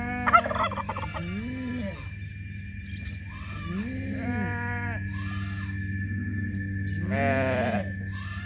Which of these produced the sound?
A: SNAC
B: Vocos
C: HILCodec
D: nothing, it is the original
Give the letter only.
D